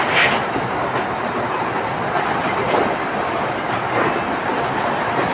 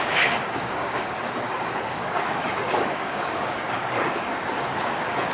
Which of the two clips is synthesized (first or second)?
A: second